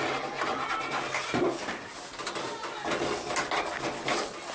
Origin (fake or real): real